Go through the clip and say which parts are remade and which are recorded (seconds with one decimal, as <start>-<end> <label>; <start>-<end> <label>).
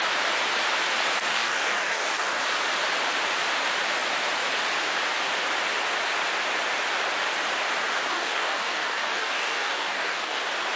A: 0.0-1.3 recorded; 1.3-2.4 remade; 2.4-8.1 recorded; 8.1-10.4 remade; 10.4-10.8 recorded